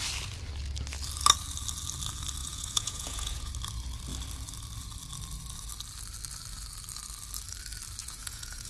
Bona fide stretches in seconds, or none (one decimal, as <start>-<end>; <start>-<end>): 0.0-2.4; 3.5-8.0